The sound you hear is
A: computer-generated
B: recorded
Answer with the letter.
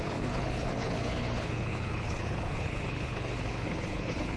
A